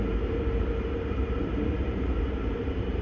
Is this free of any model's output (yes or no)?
no